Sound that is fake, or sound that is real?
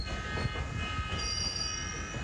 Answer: real